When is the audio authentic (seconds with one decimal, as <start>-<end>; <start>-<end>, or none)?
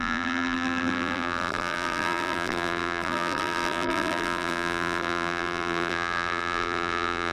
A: none